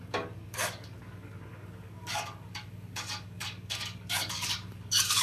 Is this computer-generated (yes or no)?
yes